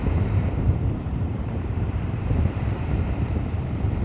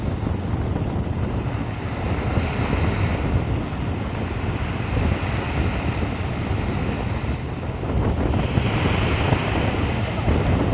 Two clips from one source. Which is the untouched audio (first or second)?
second